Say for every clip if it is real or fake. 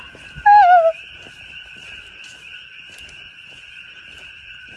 real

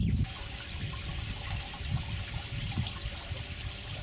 real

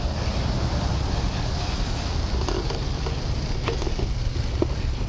real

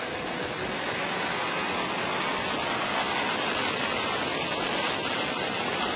real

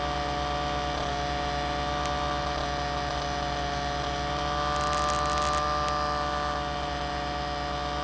real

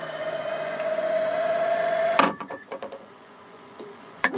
fake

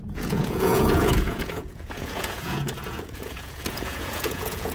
fake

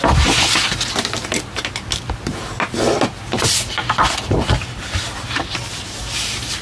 real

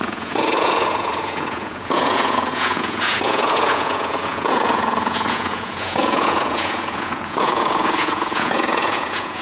fake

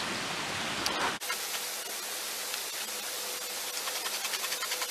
real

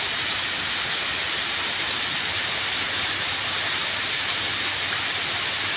real